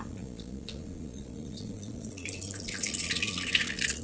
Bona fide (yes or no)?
no